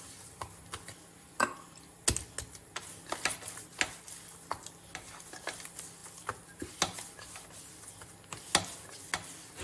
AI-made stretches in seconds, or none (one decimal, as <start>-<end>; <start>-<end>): none